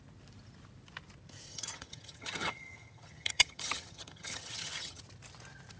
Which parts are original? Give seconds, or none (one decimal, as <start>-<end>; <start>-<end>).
0.0-1.5; 5.0-5.8